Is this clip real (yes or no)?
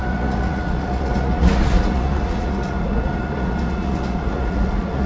no